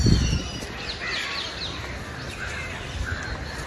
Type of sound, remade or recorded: recorded